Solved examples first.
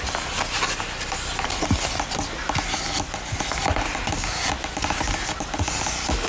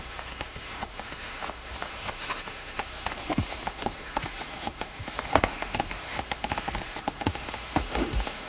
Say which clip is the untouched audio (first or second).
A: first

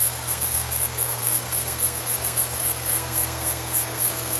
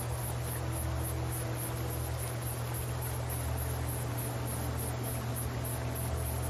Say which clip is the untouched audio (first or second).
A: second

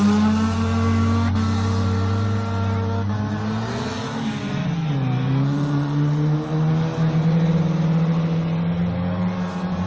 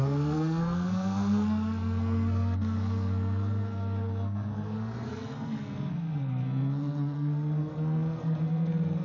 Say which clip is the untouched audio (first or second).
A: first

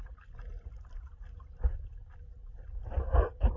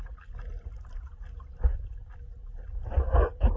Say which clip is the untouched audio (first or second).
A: second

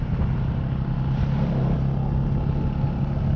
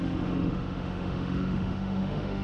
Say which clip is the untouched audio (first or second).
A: first